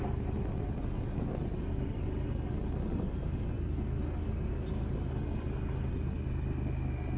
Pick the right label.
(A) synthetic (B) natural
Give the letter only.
B